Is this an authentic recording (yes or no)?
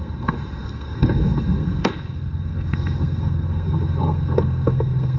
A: no